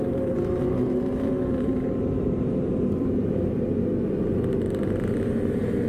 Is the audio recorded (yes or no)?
no